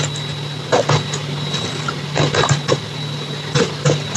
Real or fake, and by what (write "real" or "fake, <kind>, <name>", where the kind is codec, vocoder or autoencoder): real